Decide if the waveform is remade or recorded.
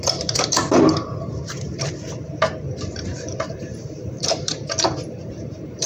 remade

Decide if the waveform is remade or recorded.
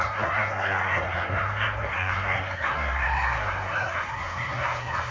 remade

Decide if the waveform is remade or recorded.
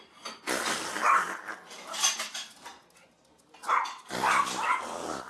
recorded